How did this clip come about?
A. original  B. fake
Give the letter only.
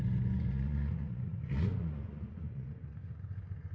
B